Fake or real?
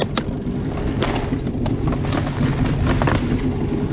real